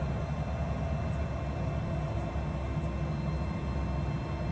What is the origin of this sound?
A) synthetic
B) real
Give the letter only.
B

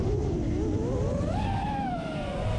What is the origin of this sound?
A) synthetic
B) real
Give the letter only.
A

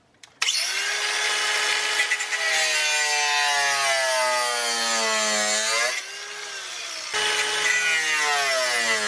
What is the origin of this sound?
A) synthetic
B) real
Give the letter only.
B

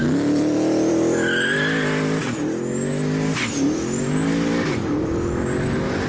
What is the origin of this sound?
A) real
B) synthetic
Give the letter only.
B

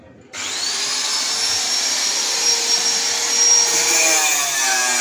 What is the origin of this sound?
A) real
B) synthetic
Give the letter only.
B